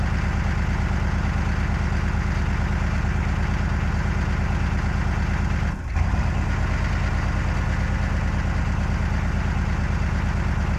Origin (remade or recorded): recorded